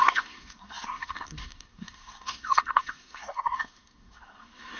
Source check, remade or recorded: remade